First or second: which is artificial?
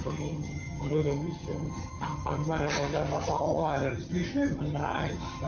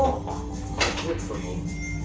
first